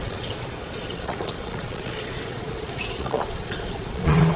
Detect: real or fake fake